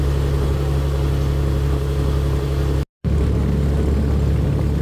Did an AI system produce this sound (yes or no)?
no